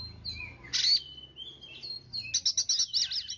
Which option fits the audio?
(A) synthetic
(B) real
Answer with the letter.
B